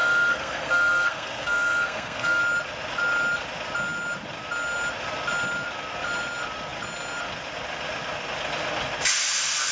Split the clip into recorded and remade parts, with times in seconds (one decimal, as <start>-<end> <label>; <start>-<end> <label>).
0.0-2.4 remade; 2.4-9.7 recorded